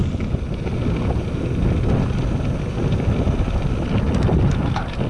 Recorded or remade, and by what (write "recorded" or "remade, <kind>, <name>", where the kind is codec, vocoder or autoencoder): recorded